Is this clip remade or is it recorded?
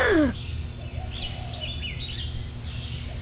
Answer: recorded